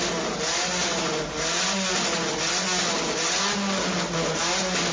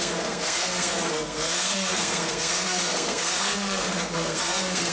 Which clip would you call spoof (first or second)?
second